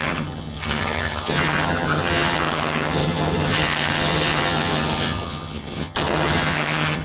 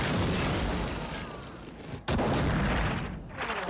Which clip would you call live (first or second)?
second